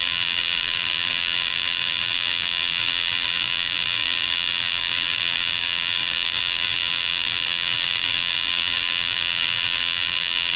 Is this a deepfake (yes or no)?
yes